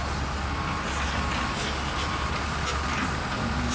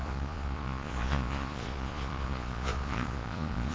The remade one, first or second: second